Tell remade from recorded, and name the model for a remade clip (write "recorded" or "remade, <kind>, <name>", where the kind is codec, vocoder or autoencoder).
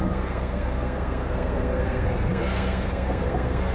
remade, codec, SNAC